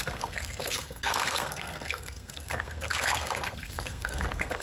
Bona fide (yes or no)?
no